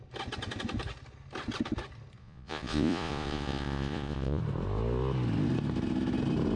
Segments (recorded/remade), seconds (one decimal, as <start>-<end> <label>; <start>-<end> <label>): 0.0-2.2 recorded; 2.2-4.4 remade; 4.4-6.6 recorded